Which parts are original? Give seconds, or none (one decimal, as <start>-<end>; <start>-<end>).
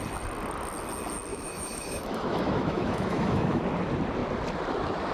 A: 0.0-1.3; 3.6-5.1